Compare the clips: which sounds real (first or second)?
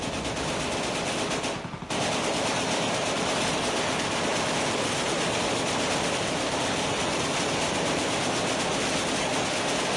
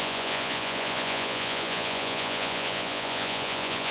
first